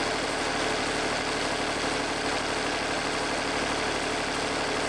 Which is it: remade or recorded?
recorded